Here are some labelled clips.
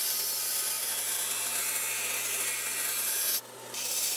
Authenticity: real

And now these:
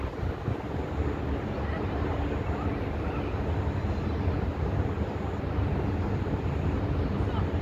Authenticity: real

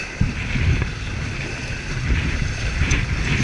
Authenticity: fake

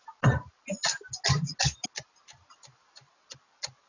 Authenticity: real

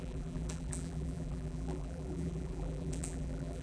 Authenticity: fake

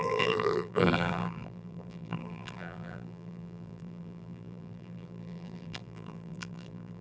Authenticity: fake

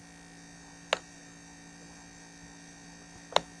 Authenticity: real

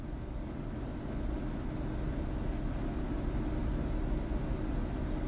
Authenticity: real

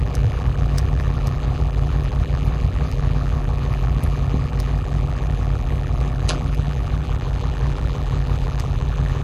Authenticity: fake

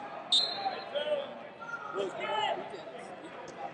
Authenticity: real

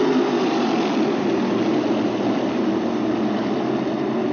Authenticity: real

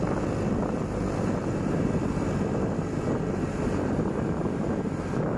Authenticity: real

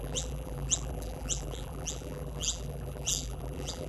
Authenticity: fake